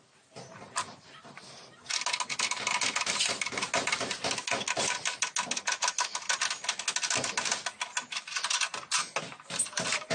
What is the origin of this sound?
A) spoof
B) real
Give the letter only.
B